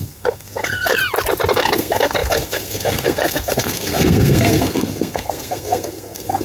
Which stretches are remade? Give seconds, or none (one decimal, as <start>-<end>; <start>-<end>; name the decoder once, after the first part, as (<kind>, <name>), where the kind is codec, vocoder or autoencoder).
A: 0.0-1.0 (codec, SNAC); 1.5-6.4